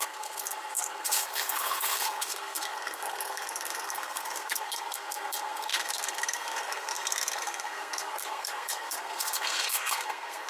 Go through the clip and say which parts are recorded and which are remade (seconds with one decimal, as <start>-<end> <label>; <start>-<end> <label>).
0.0-10.5 remade